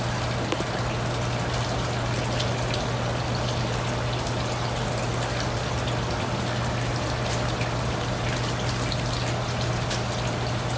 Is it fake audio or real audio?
real